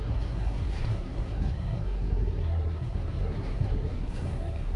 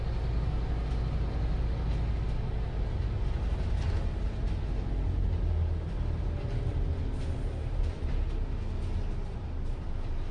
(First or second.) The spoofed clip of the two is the first